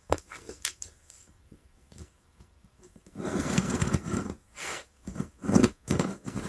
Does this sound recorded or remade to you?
remade